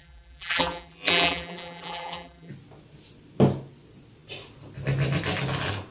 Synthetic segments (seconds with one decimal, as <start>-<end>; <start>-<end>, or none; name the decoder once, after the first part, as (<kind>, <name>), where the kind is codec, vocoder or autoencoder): 0.0-2.5 (vocoder, BigVGAN v2)